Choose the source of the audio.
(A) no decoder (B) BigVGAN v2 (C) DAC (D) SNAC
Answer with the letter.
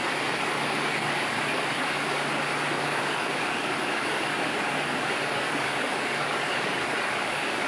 C